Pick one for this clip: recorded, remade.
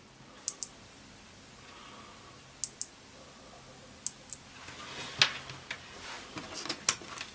recorded